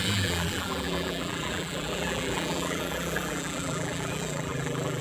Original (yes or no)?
no